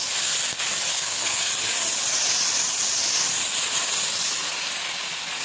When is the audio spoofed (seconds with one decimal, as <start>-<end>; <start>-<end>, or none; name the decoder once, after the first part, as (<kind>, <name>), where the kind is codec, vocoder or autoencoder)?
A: 0.9-1.5 (codec, SNAC)